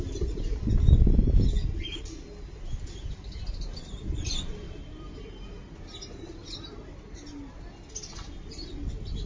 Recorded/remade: recorded